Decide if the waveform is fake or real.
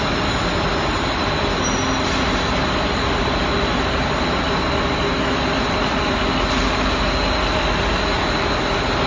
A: real